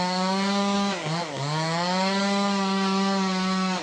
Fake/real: fake